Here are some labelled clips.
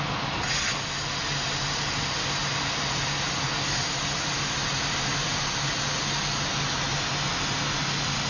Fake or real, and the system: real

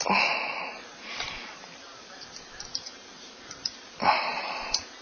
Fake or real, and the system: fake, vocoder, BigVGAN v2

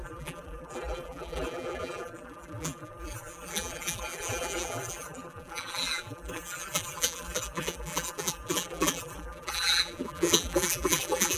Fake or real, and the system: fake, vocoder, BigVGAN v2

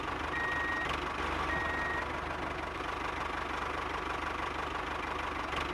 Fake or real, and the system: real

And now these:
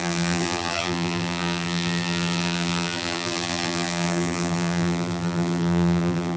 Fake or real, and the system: fake, vocoder, BigVGAN v2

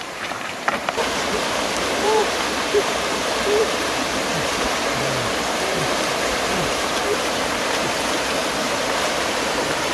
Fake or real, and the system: fake, vocoder, BigVGAN v2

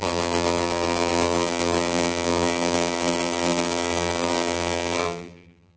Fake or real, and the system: fake, vocoder, BigVGAN v2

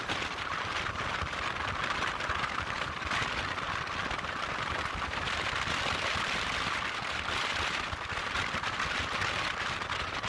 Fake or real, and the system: fake, vocoder, BigVGAN v2